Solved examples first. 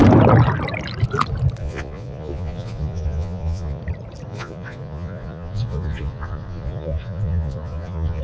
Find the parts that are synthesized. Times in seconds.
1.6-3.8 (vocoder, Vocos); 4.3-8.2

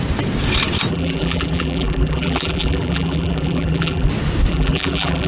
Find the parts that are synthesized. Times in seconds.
0.9-4.1 (vocoder, BigVGAN v2); 4.5-5.3

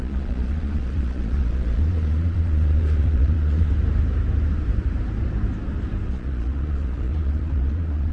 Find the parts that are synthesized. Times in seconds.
0.0-3.7 (vocoder, Vocos); 6.1-8.1

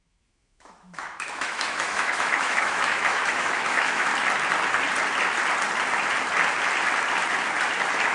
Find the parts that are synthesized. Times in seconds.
0.0-4.1 (autoencoder, DAC-VAE)

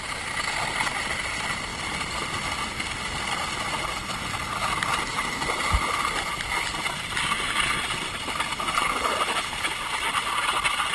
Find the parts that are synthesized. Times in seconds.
none

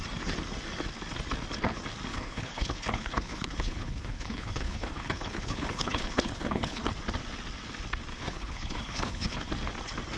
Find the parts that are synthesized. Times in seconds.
2.1-6.9 (codec, HILCodec); 8.1-9.5

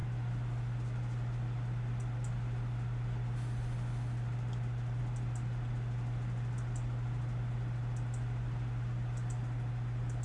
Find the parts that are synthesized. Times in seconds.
none

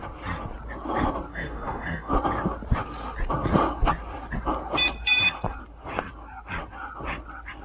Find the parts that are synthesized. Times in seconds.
1.3-2.1 (codec, DAC)